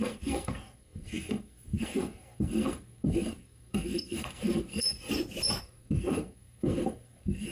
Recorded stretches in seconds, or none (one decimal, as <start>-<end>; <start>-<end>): 5.1-5.6